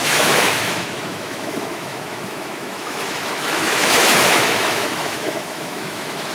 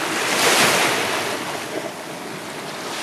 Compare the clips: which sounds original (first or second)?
second